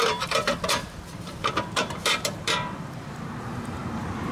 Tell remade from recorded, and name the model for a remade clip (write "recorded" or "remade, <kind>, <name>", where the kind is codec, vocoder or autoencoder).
remade, vocoder, BigVGAN v2